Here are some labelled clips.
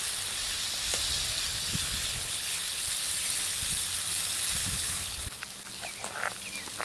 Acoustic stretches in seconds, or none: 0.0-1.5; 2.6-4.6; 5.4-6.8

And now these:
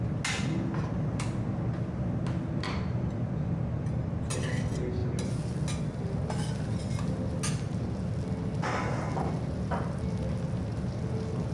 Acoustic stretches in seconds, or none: 0.0-11.5

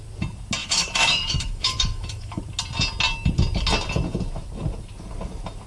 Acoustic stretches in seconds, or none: 0.0-0.6; 2.4-5.7